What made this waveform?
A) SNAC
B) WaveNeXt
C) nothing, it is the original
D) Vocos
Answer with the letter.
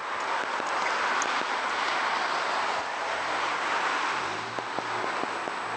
C